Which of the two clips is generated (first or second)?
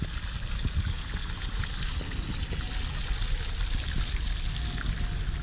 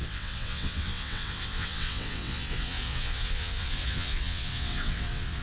second